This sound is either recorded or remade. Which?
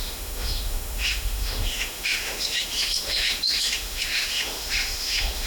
remade